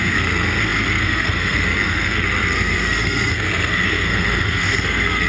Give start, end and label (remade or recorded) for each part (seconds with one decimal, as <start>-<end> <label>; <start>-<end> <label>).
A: 0.0-5.3 remade